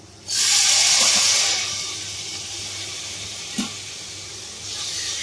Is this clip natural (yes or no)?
yes